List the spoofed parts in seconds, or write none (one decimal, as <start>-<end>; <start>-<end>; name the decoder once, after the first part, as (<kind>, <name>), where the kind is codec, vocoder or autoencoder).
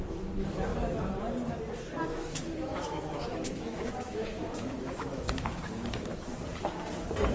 0.0-0.7 (autoencoder, DAC-VAE); 2.1-6.3